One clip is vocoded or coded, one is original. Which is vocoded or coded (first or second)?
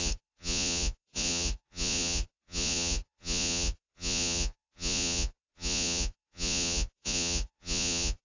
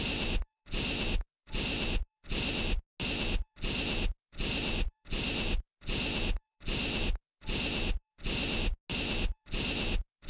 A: first